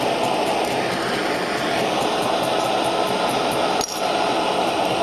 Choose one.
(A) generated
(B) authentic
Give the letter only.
B